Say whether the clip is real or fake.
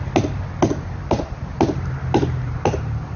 real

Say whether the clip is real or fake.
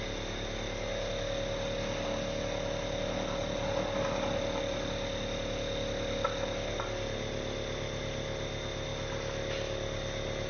real